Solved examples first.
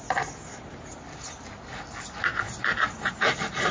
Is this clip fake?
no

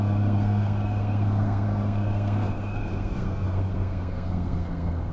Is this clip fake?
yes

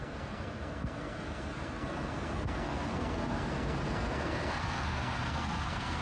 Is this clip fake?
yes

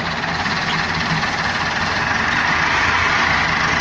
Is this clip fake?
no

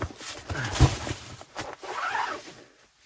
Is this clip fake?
no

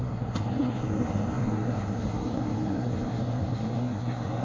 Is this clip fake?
yes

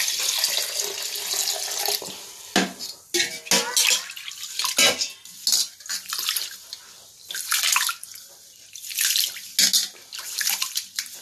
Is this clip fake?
no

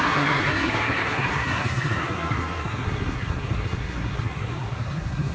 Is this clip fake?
yes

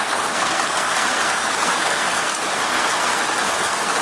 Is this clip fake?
yes